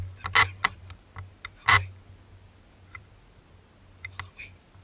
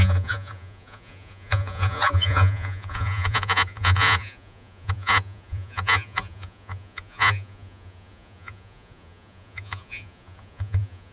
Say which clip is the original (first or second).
first